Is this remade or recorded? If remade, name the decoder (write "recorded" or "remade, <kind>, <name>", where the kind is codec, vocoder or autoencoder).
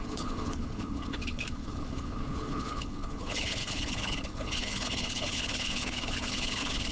remade, codec, HILCodec